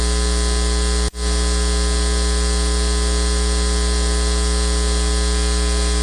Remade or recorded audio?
recorded